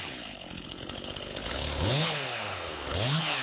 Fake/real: fake